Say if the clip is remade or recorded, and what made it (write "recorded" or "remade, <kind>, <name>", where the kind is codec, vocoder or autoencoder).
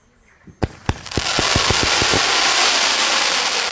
recorded